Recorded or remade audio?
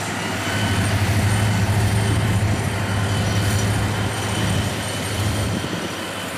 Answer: recorded